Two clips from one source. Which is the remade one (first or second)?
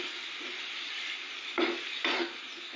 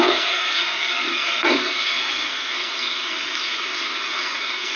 second